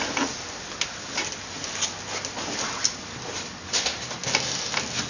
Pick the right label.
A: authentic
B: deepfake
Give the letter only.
A